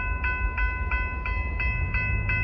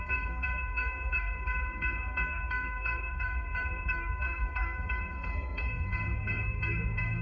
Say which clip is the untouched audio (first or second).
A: first